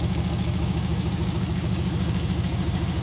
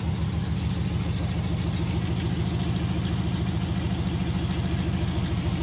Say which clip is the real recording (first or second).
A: second